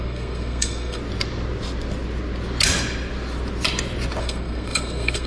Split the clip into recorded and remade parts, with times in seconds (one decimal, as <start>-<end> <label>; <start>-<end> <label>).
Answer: 0.0-1.0 remade; 1.0-4.2 recorded; 4.2-5.3 remade